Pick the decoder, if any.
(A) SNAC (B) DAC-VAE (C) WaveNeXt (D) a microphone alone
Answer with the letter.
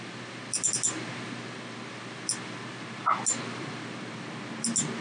D